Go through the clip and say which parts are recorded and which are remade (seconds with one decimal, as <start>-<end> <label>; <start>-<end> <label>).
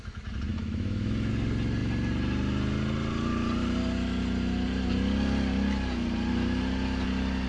0.0-0.5 recorded; 0.5-1.3 remade; 1.3-7.5 recorded